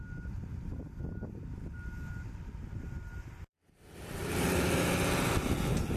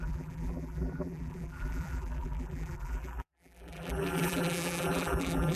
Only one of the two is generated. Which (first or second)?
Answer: second